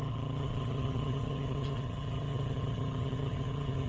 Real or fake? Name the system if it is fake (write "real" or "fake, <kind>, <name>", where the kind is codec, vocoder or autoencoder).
fake, vocoder, HiFi-GAN